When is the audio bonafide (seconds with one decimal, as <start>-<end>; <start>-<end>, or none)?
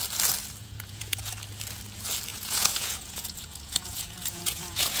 0.0-0.6; 1.3-2.3